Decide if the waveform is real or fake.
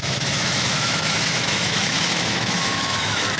fake